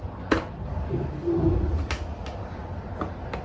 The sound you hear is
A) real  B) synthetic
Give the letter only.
A